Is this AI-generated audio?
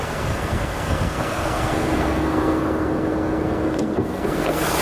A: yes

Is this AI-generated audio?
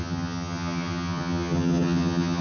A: yes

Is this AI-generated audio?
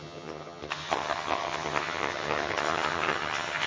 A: yes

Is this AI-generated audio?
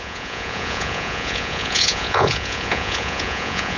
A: yes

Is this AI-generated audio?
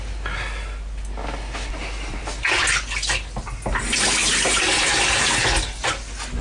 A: no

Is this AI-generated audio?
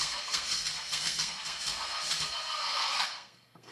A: yes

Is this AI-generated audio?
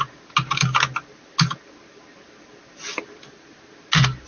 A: no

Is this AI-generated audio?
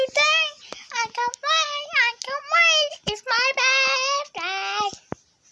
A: no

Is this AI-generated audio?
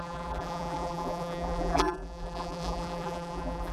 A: yes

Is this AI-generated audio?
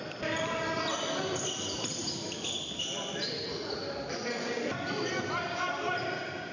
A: no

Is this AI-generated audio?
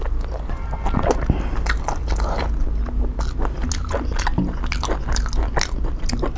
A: no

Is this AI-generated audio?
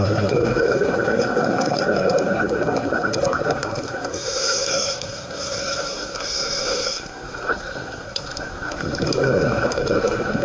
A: yes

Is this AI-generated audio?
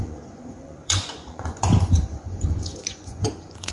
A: yes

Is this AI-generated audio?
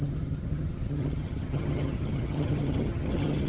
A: yes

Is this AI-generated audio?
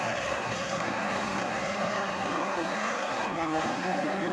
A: yes